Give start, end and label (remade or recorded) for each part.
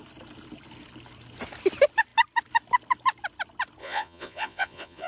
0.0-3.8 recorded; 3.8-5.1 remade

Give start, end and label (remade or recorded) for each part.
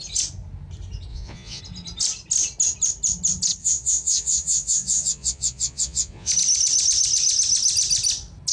0.0-1.1 recorded; 1.1-1.6 remade; 1.6-3.6 recorded; 3.6-6.3 remade; 6.3-8.5 recorded